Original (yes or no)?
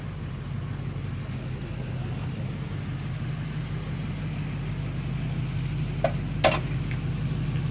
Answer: yes